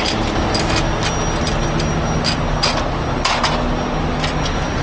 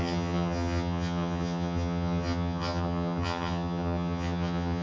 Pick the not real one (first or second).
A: second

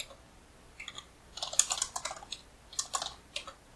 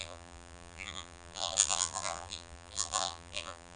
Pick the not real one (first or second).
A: second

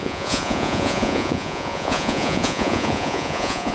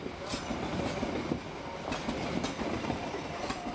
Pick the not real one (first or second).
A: first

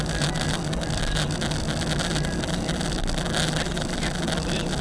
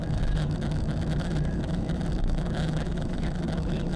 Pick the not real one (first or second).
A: second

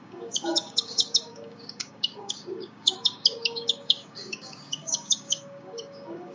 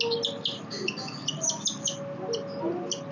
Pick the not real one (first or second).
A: first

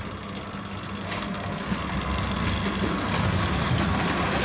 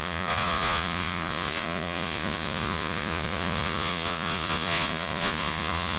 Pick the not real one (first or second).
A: second